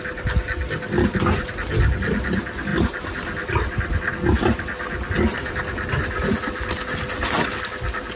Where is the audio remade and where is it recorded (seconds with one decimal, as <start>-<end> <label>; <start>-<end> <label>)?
0.0-8.2 recorded